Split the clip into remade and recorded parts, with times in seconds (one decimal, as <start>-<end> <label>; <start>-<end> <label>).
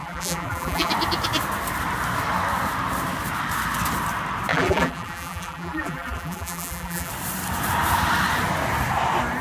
0.0-0.9 remade; 0.9-4.5 recorded; 4.5-7.1 remade; 7.1-9.4 recorded